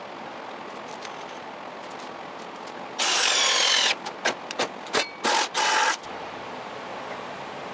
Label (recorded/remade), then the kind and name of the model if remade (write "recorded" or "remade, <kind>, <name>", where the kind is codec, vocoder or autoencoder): recorded